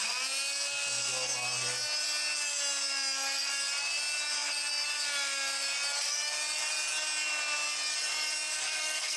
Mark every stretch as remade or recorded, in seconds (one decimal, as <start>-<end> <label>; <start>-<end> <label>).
0.0-8.5 recorded; 8.5-9.2 remade